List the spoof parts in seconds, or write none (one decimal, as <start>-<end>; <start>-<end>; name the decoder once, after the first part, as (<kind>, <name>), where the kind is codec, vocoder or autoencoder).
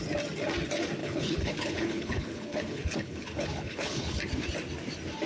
1.0-4.2 (codec, HILCodec)